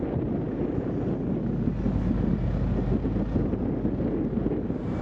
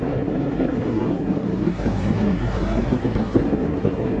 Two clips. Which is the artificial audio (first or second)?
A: second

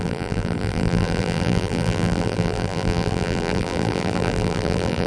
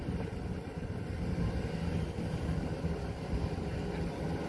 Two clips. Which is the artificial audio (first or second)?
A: first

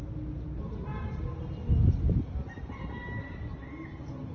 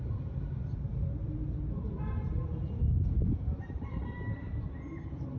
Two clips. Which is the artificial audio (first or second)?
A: second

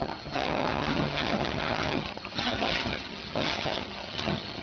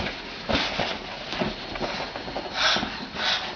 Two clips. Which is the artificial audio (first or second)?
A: first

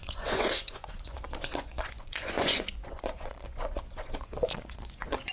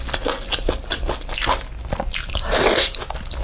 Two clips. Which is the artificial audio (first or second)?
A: first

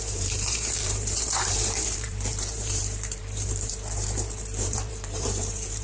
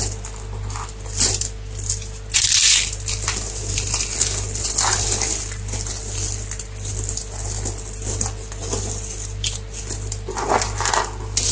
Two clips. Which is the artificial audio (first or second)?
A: first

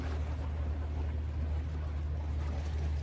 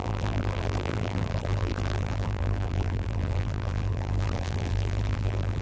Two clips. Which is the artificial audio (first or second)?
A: second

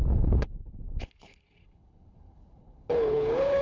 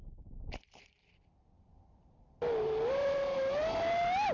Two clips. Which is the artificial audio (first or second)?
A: first